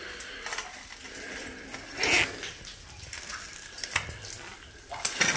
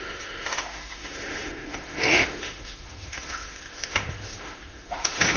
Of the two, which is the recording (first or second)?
first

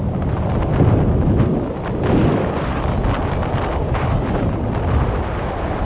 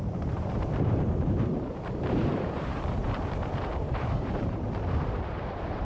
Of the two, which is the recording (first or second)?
first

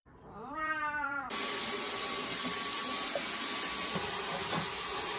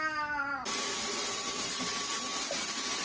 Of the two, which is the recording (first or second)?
second